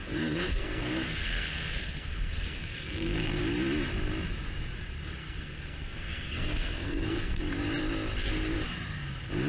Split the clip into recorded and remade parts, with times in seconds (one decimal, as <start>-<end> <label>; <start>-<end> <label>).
0.0-3.4 remade; 3.4-5.2 recorded; 5.2-7.4 remade; 7.4-9.5 recorded